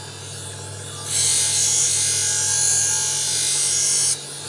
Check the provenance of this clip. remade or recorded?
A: recorded